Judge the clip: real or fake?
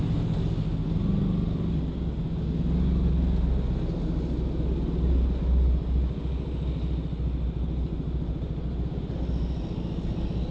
real